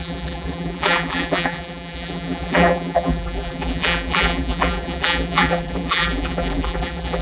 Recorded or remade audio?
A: remade